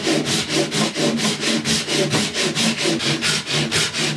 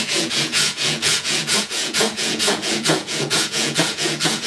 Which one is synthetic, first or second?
second